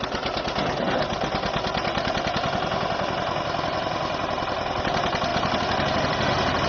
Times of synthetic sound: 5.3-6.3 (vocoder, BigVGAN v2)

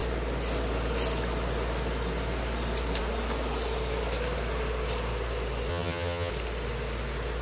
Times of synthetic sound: 5.7-6.3 (vocoder, HiFi-GAN)

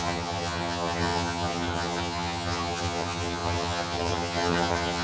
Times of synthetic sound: 0.0-5.0 (vocoder, HiFi-GAN)

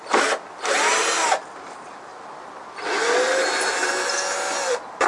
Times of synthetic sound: none

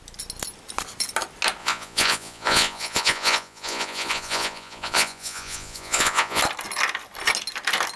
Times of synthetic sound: 1.6-6.4 (vocoder, Vocos)

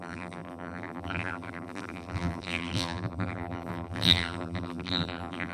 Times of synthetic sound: 0.0-5.5 (vocoder, BigVGAN v2)